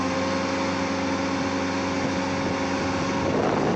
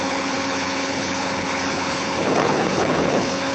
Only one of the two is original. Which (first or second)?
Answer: first